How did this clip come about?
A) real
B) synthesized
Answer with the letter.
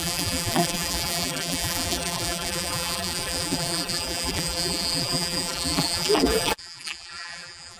B